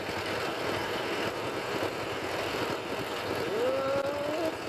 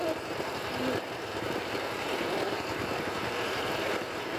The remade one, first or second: second